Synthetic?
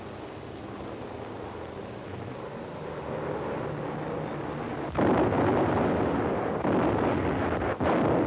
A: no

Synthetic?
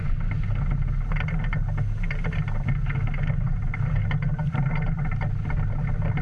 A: no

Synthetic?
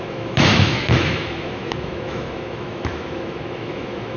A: yes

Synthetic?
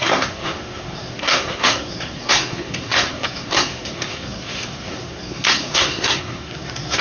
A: yes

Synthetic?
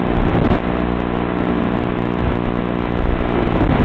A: no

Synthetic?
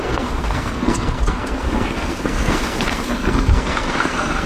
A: yes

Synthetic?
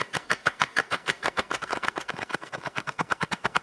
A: yes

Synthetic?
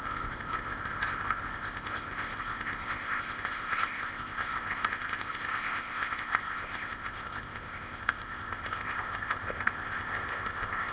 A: yes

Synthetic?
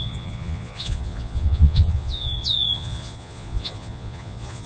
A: yes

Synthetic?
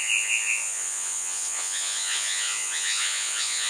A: yes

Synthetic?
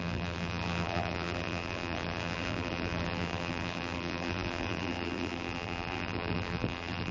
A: yes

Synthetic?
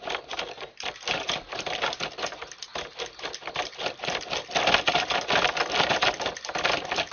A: no